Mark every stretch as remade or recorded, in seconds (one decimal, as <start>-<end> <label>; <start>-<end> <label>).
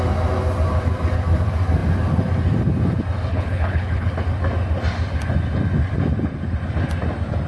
0.0-3.3 recorded; 3.3-4.1 remade; 4.1-7.5 recorded